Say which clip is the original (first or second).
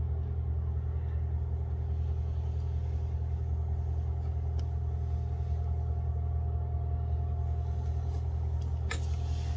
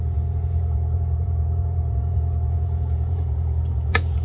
first